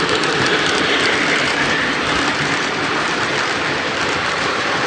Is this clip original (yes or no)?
yes